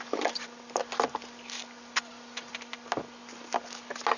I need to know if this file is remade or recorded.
recorded